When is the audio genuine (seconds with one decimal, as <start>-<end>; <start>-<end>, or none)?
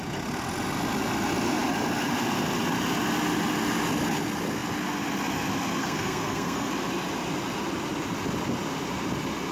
0.0-5.8; 6.7-9.5